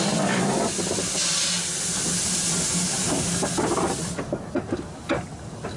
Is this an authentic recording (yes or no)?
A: yes